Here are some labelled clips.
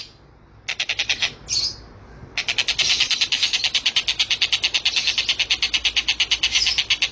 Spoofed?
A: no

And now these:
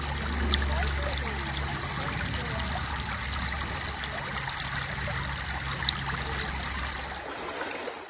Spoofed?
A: no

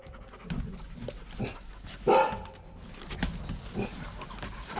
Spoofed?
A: no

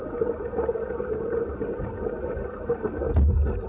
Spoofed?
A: no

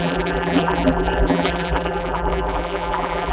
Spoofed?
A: yes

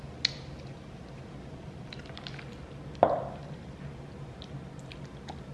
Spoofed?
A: no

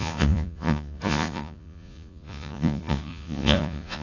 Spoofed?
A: yes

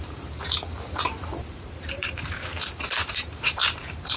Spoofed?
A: yes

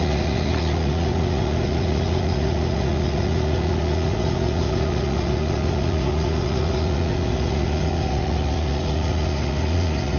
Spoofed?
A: yes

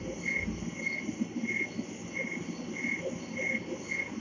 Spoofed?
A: no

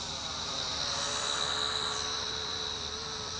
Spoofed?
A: yes